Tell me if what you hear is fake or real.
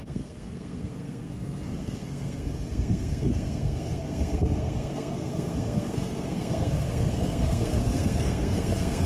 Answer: fake